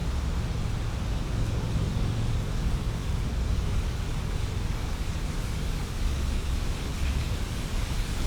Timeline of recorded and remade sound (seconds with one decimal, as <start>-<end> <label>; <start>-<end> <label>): 0.0-1.0 recorded; 1.0-8.3 remade